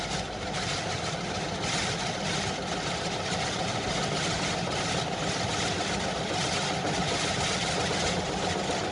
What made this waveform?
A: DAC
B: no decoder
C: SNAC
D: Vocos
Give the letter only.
B